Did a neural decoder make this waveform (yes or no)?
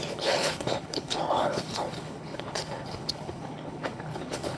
yes